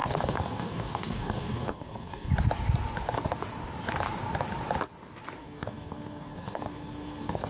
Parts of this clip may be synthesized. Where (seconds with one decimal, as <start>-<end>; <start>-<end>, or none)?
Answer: 0.0-2.3; 5.4-7.5